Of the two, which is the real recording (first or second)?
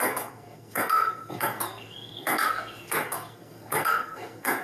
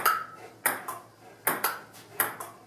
second